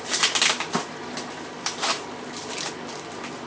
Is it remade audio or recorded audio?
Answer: recorded